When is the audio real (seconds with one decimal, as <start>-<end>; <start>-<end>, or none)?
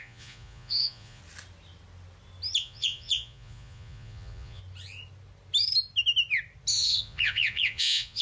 1.2-2.6; 4.6-6.7